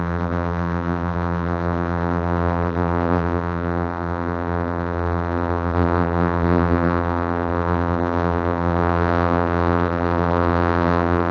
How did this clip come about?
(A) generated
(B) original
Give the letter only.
A